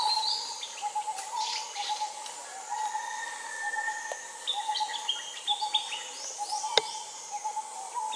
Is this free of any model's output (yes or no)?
yes